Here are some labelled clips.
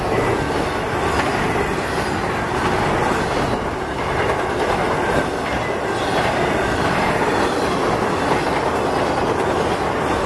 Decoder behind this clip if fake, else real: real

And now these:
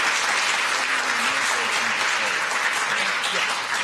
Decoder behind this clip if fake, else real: real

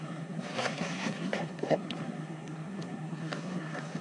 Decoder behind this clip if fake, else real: fake, codec, SNAC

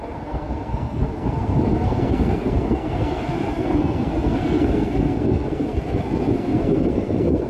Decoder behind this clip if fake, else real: fake, codec, SNAC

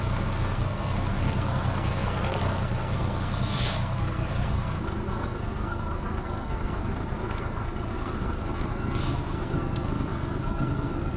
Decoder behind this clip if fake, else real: fake, codec, SNAC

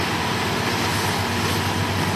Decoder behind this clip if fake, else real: real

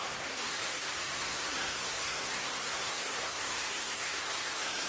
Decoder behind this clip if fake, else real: fake, codec, SNAC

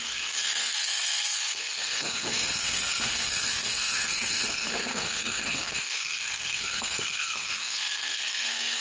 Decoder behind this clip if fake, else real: fake, codec, SNAC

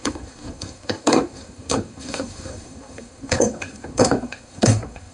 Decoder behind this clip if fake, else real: fake, codec, SNAC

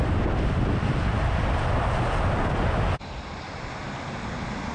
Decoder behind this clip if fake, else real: real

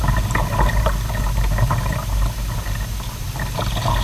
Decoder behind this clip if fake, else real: real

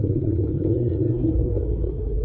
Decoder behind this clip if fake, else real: fake, codec, SNAC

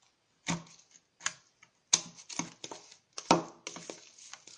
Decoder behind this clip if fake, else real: real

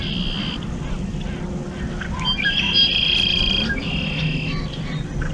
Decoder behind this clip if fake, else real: real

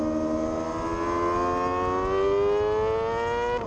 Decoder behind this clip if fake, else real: real